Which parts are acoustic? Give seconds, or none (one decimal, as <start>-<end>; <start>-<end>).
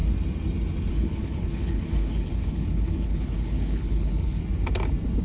0.0-0.9; 4.4-5.2